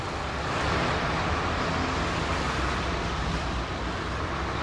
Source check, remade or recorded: recorded